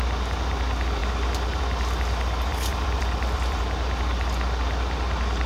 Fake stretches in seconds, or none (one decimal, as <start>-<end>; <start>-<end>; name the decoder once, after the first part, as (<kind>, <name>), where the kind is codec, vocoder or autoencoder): 2.5-3.6 (vocoder, BigVGAN v2)